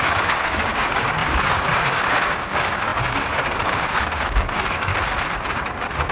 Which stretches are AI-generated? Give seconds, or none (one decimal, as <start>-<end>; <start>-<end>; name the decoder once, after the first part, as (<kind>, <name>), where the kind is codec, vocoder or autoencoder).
0.0-4.9 (codec, DAC); 5.5-6.1